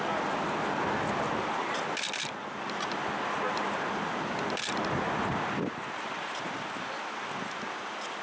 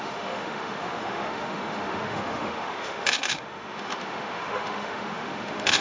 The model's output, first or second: second